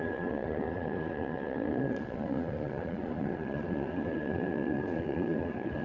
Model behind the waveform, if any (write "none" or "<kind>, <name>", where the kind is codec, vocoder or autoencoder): vocoder, Vocos